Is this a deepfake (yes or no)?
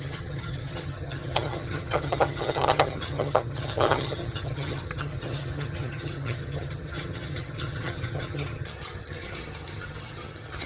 yes